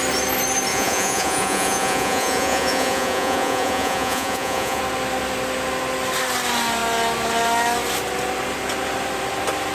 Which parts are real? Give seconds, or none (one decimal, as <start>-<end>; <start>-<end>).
0.0-0.7; 4.8-9.7